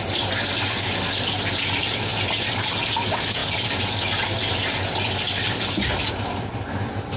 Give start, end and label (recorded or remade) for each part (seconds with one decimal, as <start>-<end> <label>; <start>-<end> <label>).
0.0-7.2 recorded